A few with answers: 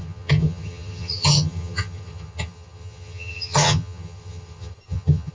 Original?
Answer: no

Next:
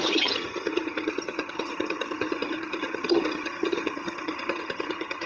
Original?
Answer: no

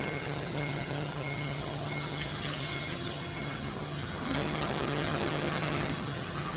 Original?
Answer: no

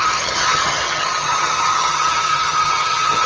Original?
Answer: no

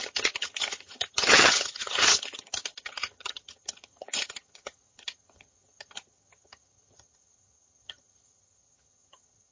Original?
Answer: no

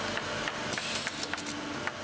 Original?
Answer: yes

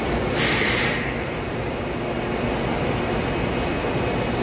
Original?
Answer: yes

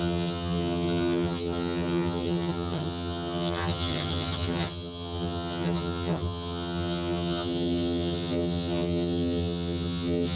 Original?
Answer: no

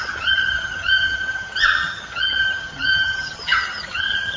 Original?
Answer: no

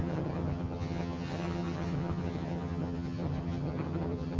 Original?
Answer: no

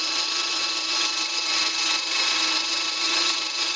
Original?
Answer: no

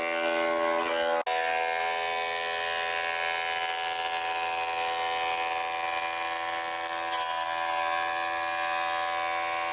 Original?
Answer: yes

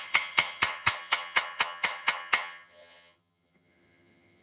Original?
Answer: no